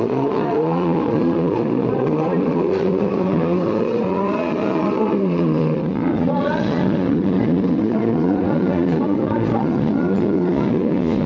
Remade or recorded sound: remade